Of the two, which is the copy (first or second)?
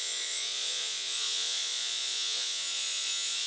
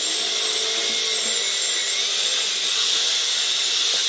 first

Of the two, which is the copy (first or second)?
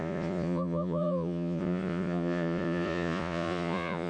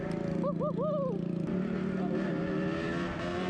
first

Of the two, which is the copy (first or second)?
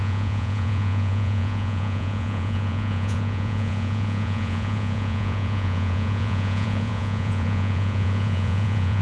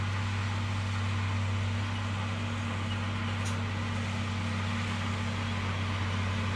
first